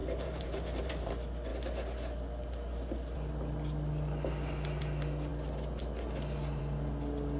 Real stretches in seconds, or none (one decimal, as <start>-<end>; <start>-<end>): 1.1-7.4